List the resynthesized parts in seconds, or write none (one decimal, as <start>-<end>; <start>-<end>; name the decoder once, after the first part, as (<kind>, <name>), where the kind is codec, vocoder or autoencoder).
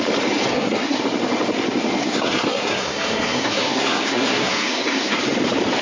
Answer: 0.5-1.0 (codec, SNAC); 2.0-5.2